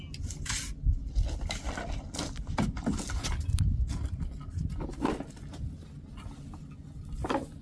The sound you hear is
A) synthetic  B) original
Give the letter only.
B